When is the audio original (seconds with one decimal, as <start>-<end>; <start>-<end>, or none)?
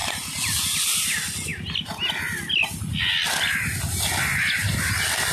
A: 0.0-5.3